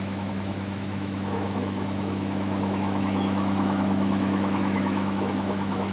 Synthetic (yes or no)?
yes